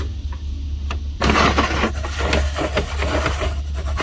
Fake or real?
real